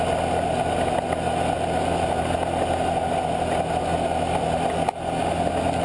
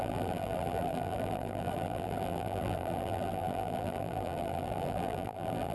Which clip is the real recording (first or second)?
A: first